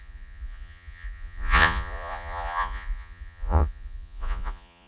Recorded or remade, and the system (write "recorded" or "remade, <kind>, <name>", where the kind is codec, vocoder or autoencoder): remade, vocoder, Vocos